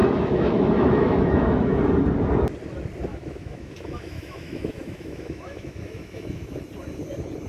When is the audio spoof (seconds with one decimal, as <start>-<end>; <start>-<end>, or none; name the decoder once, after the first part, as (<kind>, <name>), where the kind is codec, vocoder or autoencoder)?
0.0-1.8 (autoencoder, DAC-VAE); 3.1-6.6

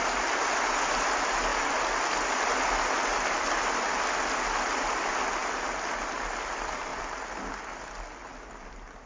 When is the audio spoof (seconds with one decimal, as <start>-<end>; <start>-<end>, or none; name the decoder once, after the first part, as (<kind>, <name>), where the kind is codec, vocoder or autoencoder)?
none

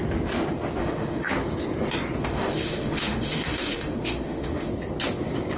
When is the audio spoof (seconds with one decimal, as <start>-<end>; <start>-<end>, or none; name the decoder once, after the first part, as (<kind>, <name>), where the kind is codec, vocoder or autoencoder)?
0.8-1.3 (autoencoder, DAC-VAE); 2.2-4.7

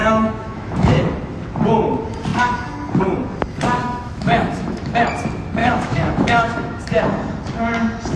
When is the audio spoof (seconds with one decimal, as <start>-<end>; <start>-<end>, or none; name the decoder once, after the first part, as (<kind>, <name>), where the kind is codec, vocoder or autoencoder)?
0.0-0.9 (autoencoder, DAC-VAE); 3.8-5.0; 5.6-7.0

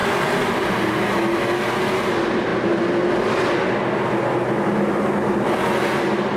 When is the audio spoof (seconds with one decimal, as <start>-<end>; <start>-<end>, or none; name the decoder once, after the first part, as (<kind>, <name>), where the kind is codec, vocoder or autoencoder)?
none

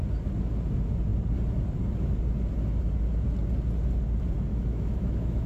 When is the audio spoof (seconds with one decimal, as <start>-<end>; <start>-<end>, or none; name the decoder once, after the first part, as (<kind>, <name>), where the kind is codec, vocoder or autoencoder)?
4.5-5.5 (autoencoder, DAC-VAE)